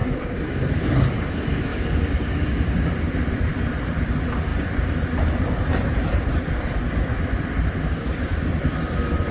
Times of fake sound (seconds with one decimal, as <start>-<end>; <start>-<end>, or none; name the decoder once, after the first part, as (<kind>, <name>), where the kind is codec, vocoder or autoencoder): 0.0-0.8 (codec, DAC); 1.7-2.9